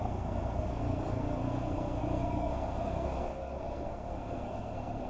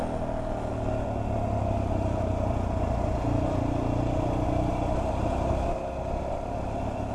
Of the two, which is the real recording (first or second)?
second